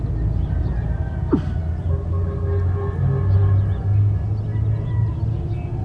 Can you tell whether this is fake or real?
real